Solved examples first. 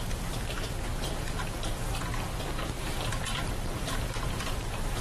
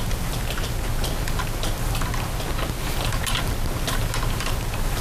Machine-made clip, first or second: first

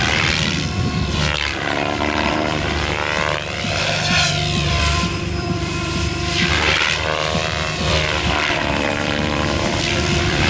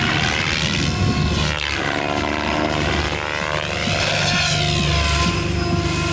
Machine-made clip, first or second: first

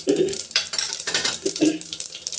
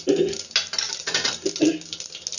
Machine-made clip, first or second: first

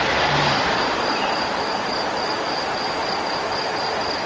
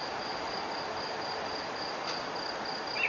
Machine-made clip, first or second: first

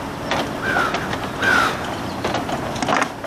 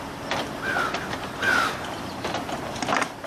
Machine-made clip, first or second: second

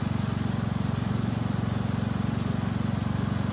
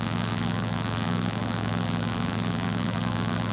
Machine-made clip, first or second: second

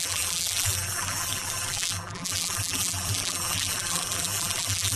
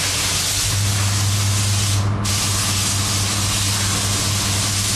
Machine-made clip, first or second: first